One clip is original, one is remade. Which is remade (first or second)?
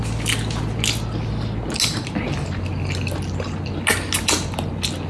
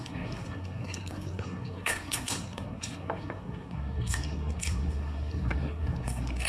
second